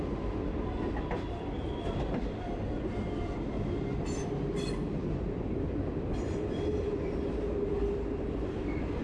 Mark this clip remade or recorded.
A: recorded